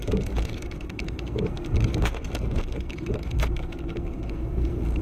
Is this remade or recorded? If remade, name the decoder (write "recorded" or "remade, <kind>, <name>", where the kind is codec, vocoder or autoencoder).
remade, codec, SNAC